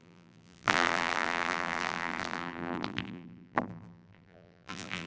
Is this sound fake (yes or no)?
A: yes